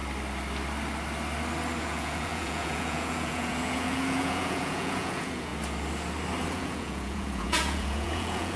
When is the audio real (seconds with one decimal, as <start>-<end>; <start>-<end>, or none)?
0.0-1.8; 5.5-6.5